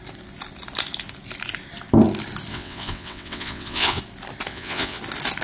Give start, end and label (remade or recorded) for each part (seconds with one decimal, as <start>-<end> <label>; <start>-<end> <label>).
0.0-2.5 recorded; 2.5-4.0 remade; 4.0-4.5 recorded; 4.5-5.0 remade; 5.0-5.4 recorded